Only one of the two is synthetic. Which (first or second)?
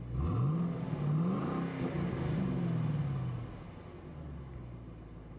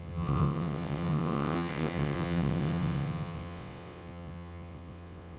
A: second